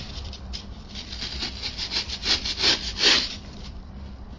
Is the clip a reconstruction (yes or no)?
yes